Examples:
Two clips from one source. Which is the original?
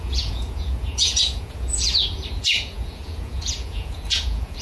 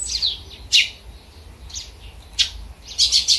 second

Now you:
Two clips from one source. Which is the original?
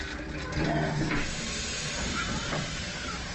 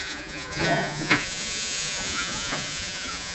first